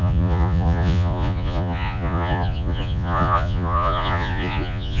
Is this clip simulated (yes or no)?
yes